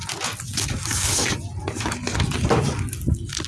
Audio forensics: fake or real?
real